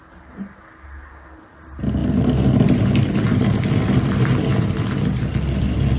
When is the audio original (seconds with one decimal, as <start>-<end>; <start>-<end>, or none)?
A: 0.0-6.0